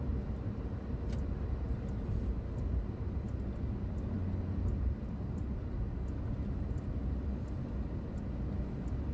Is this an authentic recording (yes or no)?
yes